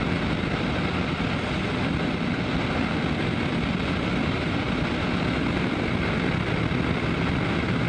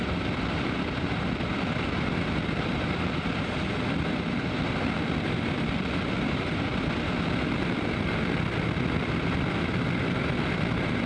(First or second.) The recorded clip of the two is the first